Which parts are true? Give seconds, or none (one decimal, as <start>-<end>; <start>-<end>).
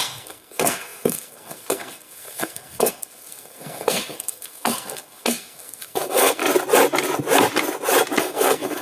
6.4-8.2